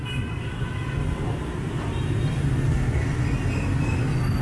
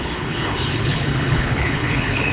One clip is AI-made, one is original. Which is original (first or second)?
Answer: first